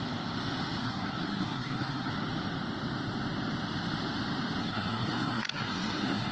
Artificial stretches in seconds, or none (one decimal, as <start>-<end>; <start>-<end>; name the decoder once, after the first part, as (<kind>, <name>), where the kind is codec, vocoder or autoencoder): 0.8-2.1 (codec, SNAC); 4.6-6.3